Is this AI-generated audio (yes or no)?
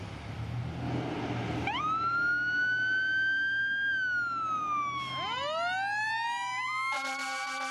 no